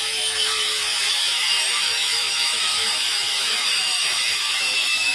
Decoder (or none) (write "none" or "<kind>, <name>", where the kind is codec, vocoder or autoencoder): autoencoder, DAC-VAE